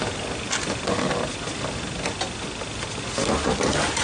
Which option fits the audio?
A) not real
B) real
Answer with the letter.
B